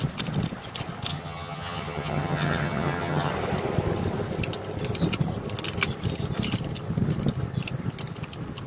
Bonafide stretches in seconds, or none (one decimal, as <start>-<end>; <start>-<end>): 0.0-1.1; 3.3-8.7